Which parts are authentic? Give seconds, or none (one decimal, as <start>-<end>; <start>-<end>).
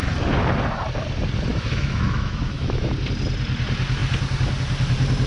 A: 0.0-1.5; 2.9-5.3